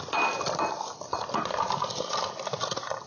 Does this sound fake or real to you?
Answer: real